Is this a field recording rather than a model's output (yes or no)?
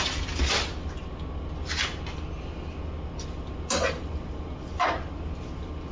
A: yes